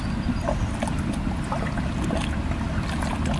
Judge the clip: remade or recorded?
recorded